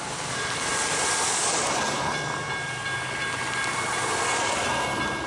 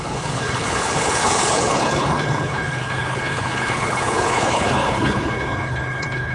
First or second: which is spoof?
second